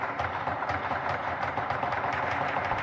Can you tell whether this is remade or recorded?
remade